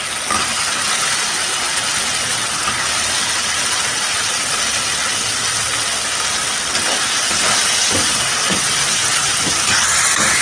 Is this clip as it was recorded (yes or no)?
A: yes